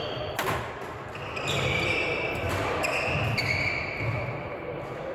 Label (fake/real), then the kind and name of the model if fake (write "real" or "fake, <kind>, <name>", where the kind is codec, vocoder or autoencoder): real